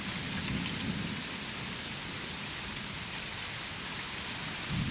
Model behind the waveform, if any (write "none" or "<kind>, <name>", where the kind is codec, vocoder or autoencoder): none